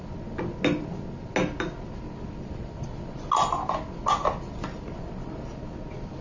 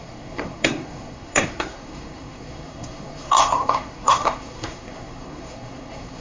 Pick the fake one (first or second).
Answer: second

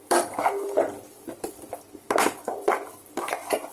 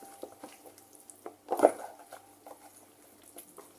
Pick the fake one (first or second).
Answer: first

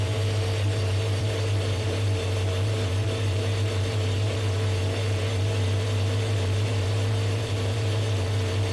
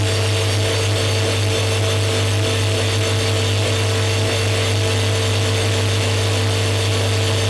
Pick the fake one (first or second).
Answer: first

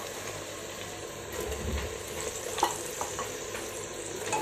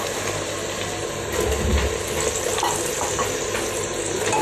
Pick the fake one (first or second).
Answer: first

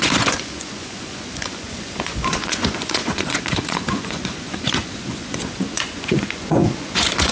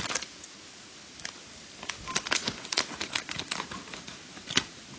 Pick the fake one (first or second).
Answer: first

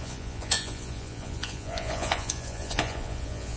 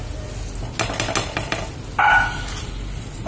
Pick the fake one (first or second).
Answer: first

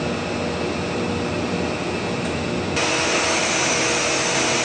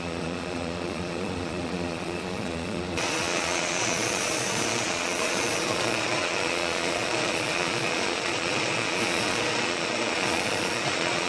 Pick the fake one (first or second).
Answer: second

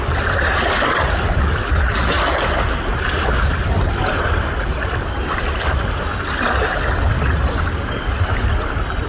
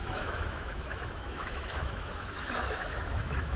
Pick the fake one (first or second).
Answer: second